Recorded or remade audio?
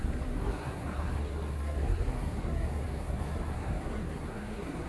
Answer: remade